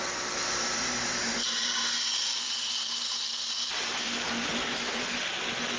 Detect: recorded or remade remade